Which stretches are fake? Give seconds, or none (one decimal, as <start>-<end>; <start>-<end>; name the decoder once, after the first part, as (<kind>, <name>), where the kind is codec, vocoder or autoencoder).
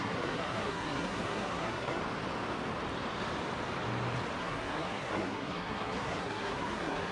0.0-2.0 (codec, SNAC); 4.4-7.1